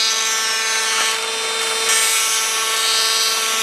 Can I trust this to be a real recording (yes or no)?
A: yes